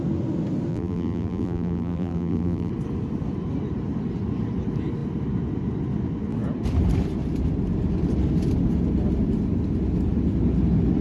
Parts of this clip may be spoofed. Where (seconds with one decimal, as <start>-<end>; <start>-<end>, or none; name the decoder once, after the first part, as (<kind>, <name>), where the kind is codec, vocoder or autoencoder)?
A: 0.7-2.7 (vocoder, BigVGAN v2)